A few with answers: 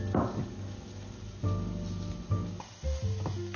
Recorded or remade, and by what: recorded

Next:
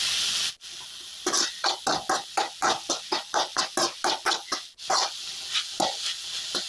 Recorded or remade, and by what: recorded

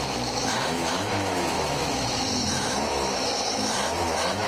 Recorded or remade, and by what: remade, autoencoder, DAC-VAE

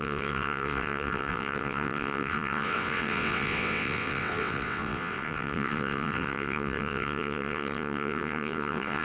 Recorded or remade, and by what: remade, vocoder, WaveNeXt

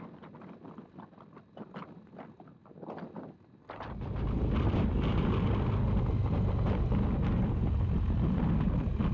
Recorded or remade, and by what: recorded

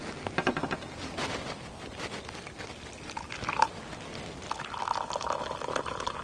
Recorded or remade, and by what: recorded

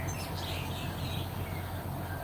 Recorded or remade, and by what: recorded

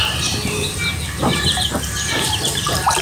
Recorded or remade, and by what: remade, vocoder, BigVGAN v2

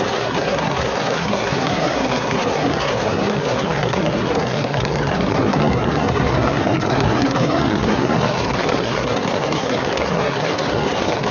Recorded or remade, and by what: remade, codec, SNAC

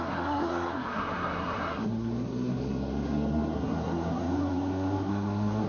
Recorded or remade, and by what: remade, codec, SNAC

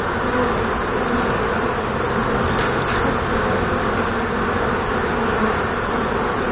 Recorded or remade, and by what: recorded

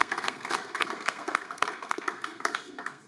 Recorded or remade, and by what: remade, codec, SNAC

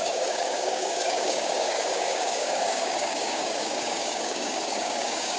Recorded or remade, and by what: remade, codec, DAC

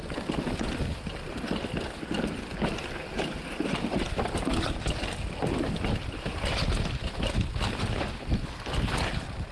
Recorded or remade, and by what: recorded